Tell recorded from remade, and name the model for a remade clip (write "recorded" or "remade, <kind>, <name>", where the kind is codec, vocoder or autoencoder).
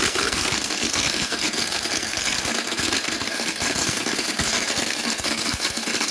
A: remade, codec, SNAC